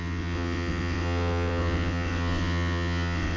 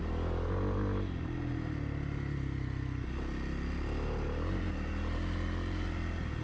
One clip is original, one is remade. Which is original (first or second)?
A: second